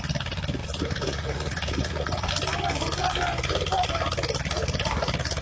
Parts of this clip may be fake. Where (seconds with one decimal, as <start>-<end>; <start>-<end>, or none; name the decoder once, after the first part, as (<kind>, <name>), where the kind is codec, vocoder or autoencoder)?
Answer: 0.6-2.3 (vocoder, Vocos)